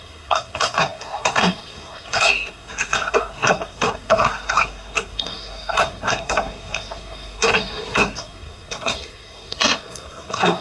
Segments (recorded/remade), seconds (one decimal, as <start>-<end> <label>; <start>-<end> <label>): 0.0-10.6 remade